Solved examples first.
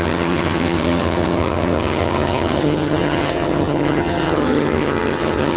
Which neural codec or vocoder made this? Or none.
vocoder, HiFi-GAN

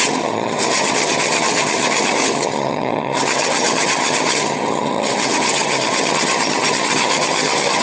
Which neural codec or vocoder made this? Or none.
vocoder, HiFi-GAN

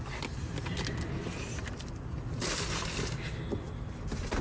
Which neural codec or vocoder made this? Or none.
none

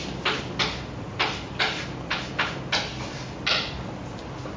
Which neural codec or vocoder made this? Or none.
none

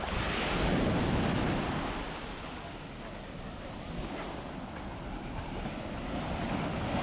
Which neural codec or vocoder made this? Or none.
none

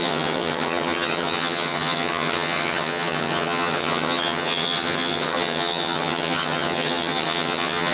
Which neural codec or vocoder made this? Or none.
vocoder, HiFi-GAN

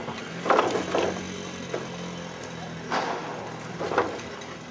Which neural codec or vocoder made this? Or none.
none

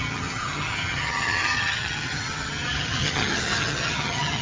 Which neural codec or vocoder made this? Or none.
vocoder, HiFi-GAN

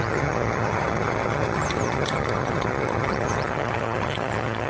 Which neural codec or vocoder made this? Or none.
vocoder, HiFi-GAN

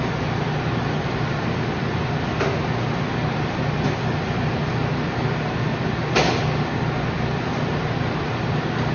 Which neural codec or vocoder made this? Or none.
none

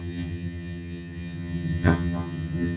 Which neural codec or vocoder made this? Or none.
vocoder, HiFi-GAN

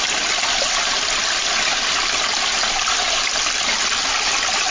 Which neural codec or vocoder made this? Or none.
none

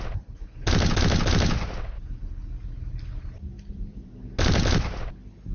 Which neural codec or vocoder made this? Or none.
none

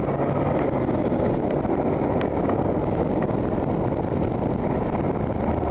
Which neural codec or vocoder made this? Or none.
none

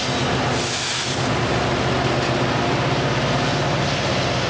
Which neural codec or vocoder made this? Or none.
none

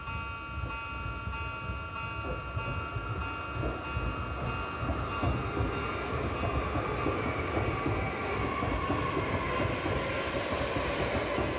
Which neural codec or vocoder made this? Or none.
none